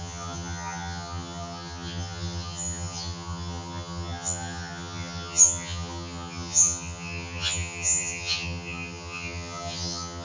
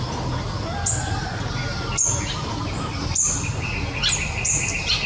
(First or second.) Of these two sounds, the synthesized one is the first